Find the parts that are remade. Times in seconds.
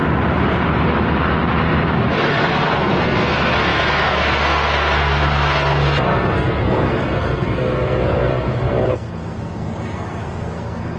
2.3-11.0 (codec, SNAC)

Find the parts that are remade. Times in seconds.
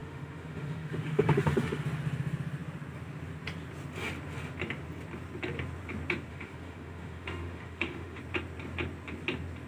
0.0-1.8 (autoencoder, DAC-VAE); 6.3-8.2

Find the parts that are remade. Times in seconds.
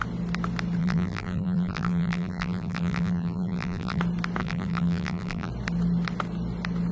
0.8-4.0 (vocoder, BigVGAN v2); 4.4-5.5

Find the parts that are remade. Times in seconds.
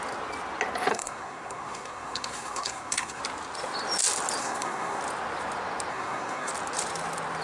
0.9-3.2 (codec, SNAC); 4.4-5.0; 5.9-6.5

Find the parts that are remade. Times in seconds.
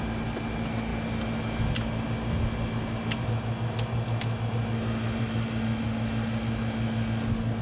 none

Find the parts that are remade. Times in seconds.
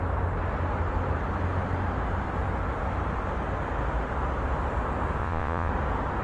5.2-5.7 (vocoder, Vocos)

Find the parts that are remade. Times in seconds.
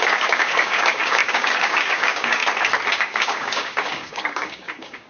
0.0-2.4 (codec, DAC); 2.9-5.1